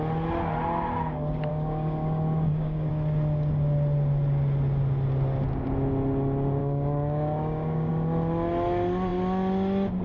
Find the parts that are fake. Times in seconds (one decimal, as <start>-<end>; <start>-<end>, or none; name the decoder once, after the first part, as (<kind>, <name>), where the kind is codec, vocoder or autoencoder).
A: 1.5-2.9 (codec, DAC); 6.6-7.9